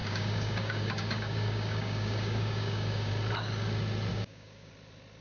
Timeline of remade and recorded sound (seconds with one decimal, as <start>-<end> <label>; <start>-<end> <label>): 0.0-3.1 remade; 3.1-4.1 recorded; 4.1-4.7 remade; 4.7-5.2 recorded

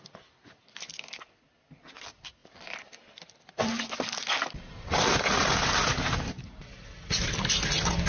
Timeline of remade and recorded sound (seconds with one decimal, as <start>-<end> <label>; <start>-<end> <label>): 0.0-8.1 recorded

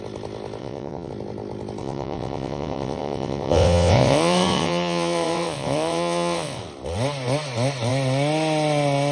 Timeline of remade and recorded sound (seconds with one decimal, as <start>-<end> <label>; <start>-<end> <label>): 0.0-0.6 recorded; 0.6-1.1 remade; 1.1-1.8 recorded; 1.8-6.6 remade; 6.6-9.1 recorded

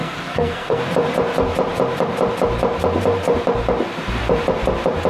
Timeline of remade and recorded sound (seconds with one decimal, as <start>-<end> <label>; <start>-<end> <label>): 0.0-0.8 remade; 0.8-5.1 recorded

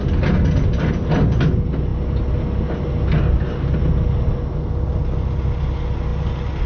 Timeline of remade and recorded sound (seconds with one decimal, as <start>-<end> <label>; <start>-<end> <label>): 0.0-6.7 recorded

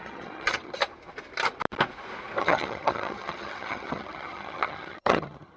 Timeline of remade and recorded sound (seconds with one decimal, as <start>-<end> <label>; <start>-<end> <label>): 0.0-0.8 remade; 0.8-2.4 recorded; 2.4-5.6 remade

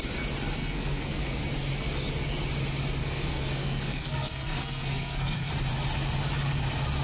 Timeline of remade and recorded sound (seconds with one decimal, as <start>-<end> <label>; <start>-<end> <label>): 0.0-0.6 recorded; 0.6-1.4 remade; 1.4-3.0 recorded; 3.0-5.5 remade; 5.5-7.0 recorded

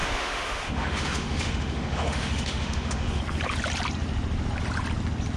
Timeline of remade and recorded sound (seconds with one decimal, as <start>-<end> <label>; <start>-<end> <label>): 0.0-3.2 remade; 3.2-5.4 recorded